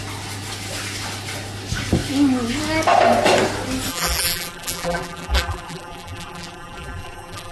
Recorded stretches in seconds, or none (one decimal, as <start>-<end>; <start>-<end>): 0.0-3.9